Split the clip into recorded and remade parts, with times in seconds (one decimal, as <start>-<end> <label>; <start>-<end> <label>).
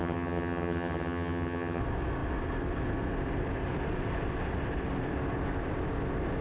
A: 0.0-1.8 remade; 1.8-6.4 recorded